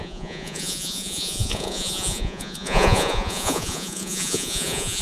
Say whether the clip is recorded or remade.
remade